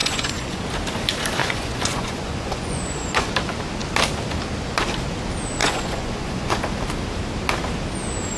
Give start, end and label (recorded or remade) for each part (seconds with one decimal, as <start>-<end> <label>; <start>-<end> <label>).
0.0-0.6 remade; 0.6-1.4 recorded; 1.4-3.3 remade; 3.3-5.6 recorded; 5.6-6.6 remade; 6.6-8.4 recorded